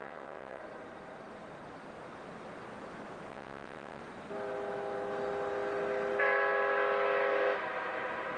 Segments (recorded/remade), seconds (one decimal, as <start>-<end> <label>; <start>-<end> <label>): 0.0-0.6 remade; 0.6-3.3 recorded; 3.3-4.0 remade; 4.0-8.4 recorded